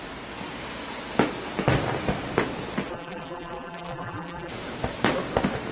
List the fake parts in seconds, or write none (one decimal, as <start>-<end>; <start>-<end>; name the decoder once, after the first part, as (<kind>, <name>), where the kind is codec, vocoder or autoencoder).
2.9-4.5 (vocoder, BigVGAN v2)

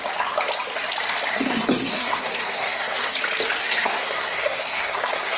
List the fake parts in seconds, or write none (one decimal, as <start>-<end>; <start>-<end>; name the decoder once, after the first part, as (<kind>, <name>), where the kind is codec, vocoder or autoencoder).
1.3-3.1 (codec, SNAC); 3.6-5.4